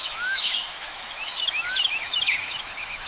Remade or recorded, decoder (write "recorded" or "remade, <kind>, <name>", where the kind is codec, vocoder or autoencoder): remade, autoencoder, DAC-VAE